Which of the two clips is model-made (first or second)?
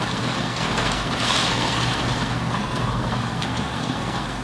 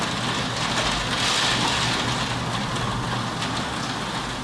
first